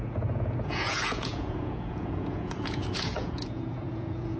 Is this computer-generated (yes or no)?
yes